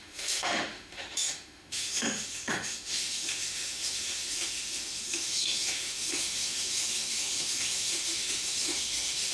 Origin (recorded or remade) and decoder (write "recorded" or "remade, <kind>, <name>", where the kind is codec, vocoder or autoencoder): remade, autoencoder, DAC-VAE